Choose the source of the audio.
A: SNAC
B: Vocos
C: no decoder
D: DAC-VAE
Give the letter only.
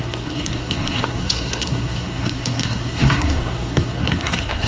A